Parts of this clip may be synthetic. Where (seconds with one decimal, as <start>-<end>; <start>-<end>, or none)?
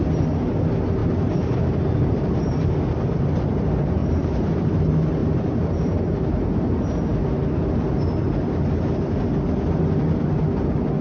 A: 1.0-2.7; 4.0-4.8; 5.2-6.8